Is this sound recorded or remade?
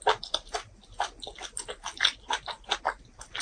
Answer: recorded